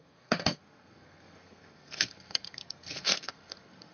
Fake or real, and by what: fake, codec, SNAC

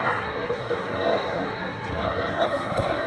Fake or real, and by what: fake, codec, SNAC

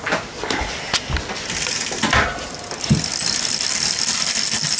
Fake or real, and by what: real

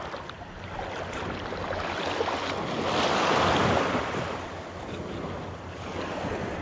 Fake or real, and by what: real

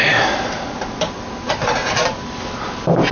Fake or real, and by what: real